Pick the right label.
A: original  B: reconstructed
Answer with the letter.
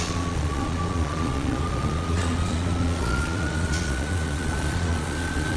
B